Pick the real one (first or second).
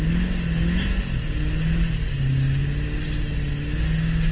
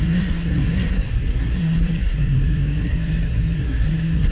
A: first